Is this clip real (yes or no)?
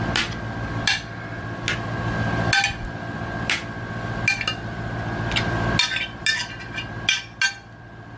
yes